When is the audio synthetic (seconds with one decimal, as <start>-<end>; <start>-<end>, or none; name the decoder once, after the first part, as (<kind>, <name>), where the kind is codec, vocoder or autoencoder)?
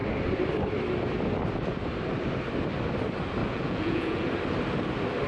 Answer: 3.4-4.2 (vocoder, Vocos)